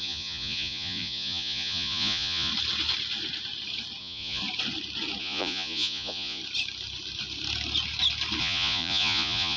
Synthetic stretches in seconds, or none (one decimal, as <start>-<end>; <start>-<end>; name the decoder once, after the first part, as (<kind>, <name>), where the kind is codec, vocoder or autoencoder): 0.0-2.5 (vocoder, Vocos); 4.0-4.4; 5.2-6.4; 8.4-9.6